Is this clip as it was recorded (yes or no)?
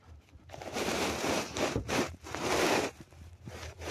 no